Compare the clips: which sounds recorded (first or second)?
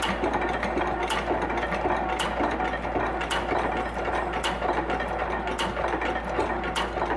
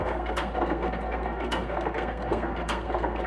first